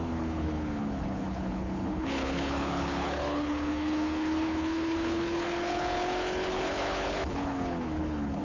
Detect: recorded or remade remade